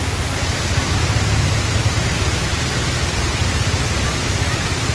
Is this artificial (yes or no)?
no